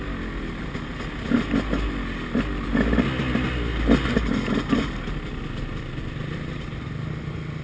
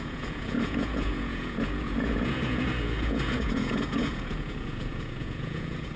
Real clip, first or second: first